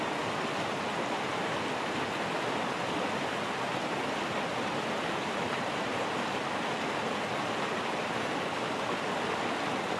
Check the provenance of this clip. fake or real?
real